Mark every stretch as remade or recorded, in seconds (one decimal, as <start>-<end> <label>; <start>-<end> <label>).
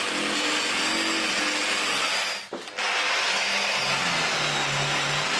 0.0-5.4 recorded